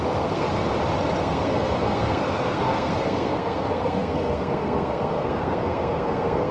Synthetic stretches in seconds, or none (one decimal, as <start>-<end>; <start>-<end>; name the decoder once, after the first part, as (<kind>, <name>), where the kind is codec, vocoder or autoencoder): 0.0-0.5 (codec, SNAC); 1.2-6.5